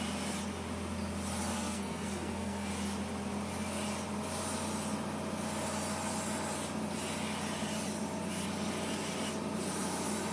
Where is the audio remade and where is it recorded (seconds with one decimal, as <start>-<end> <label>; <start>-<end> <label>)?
0.0-1.5 recorded; 1.5-2.7 remade; 2.7-10.3 recorded